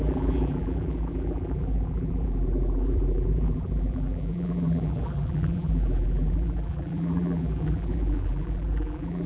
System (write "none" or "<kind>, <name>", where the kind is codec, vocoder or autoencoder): vocoder, BigVGAN v2